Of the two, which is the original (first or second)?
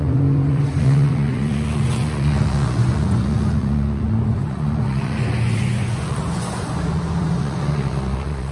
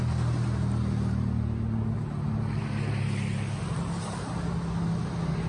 second